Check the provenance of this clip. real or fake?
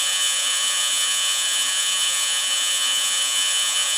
fake